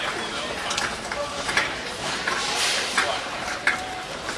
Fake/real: fake